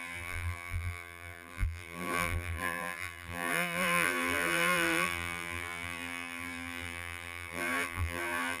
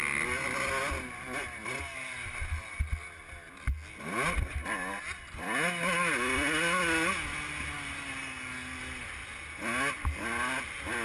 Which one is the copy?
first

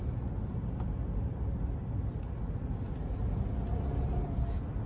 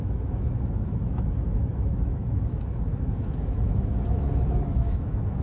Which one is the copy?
second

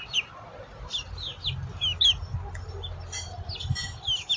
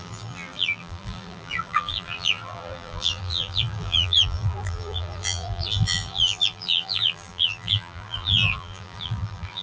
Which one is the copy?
second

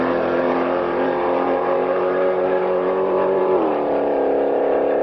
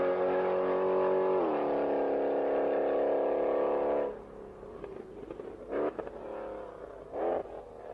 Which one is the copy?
first